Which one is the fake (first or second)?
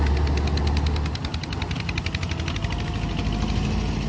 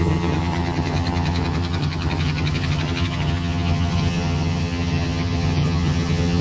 second